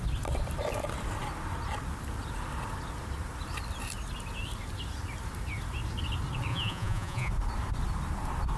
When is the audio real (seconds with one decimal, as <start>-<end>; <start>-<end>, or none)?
0.0-6.5; 7.3-8.6